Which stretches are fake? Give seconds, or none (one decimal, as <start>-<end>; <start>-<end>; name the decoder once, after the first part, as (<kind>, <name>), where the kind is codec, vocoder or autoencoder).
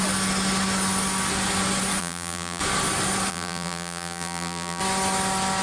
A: 2.0-2.6 (vocoder, BigVGAN v2); 3.3-4.8